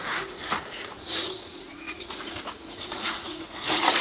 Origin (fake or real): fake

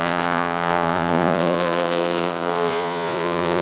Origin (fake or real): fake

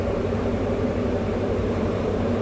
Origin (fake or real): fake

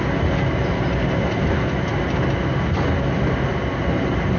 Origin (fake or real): real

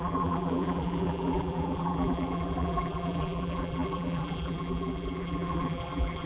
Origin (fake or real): fake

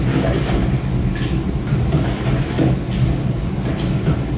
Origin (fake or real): real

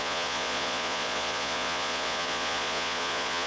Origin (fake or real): fake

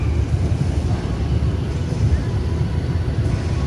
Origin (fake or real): fake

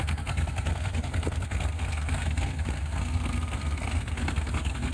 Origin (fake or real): fake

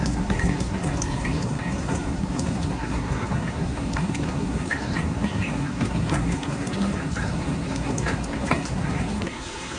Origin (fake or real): fake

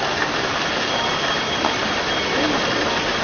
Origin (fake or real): real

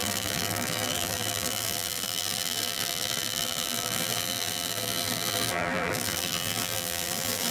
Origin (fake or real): fake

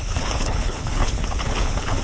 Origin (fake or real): fake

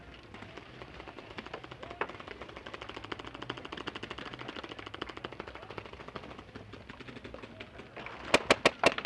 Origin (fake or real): real